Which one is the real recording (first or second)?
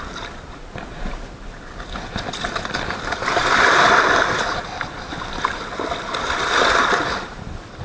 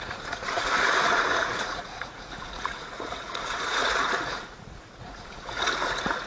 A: first